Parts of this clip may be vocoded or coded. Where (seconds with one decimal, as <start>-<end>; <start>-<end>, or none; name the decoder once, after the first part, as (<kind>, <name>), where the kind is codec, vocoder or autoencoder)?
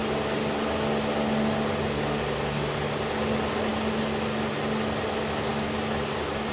none